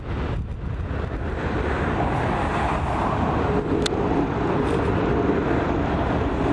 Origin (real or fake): real